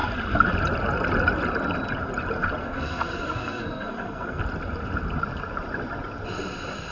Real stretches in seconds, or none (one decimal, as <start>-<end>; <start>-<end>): 0.0-2.6; 4.4-6.9